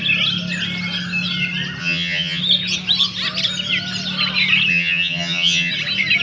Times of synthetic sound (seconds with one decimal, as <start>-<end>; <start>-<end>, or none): 1.8-2.4; 4.7-5.7

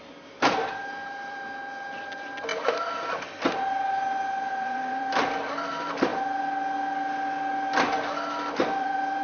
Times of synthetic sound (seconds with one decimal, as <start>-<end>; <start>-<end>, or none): 0.0-2.5; 4.5-6.1; 8.6-9.2

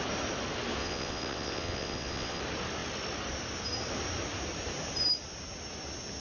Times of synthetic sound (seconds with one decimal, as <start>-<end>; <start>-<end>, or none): 0.8-2.4

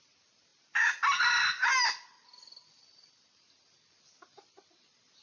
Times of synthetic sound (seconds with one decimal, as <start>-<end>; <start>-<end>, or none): none

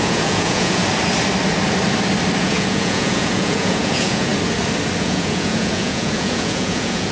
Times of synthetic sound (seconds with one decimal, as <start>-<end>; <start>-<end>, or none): 0.0-0.8; 2.4-4.3; 5.0-7.1

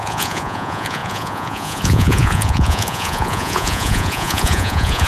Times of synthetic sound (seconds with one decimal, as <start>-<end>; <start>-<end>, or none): 0.0-5.1

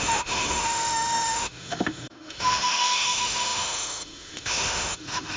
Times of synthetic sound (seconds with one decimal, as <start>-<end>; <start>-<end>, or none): 0.0-5.4

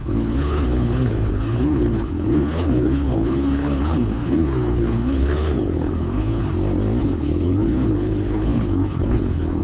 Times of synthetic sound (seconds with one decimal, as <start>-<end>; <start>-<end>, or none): 0.0-6.4; 7.0-9.6